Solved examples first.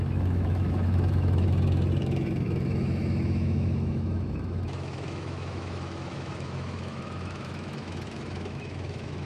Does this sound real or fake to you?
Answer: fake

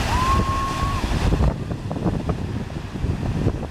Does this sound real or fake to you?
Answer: real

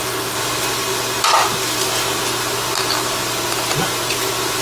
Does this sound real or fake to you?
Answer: real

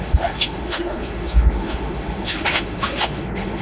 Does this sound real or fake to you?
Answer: fake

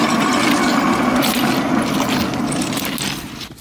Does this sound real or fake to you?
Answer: real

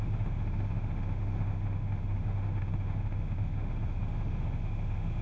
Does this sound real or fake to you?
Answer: fake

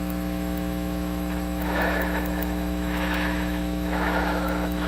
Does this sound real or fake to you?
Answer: fake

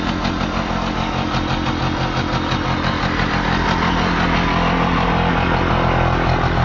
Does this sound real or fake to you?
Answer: real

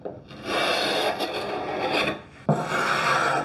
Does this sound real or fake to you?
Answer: real